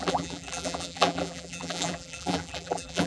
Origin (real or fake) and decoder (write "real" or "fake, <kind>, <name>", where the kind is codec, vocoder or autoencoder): fake, vocoder, BigVGAN v2